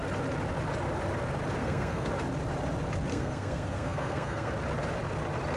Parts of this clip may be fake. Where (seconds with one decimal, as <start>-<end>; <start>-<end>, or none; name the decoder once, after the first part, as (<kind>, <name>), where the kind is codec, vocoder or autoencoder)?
1.6-2.1 (codec, SNAC); 3.1-4.5